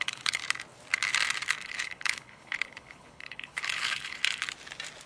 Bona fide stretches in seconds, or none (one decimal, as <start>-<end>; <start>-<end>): 0.4-1.6; 4.2-5.1